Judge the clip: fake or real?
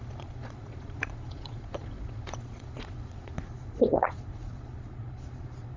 fake